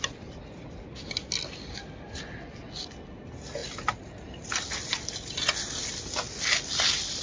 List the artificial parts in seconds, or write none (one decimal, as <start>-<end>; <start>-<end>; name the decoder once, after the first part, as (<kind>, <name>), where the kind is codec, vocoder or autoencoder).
none

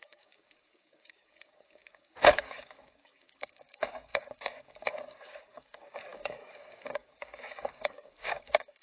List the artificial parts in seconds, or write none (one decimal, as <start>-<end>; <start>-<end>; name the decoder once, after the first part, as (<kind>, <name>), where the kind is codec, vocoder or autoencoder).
0.0-8.8 (codec, DAC)

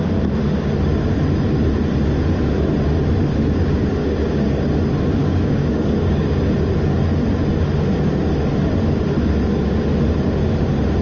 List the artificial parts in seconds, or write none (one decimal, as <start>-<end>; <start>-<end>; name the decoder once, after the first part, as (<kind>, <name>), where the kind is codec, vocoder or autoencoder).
4.0-4.6 (codec, DAC); 5.2-6.4

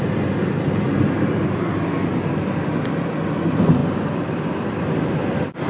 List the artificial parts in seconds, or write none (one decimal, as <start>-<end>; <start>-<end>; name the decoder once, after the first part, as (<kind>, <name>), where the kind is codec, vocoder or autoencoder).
none

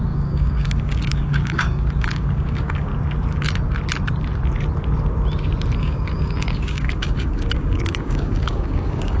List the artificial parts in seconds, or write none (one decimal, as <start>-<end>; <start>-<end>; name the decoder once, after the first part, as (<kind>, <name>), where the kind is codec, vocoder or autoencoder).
0.0-2.9 (codec, DAC); 5.8-9.2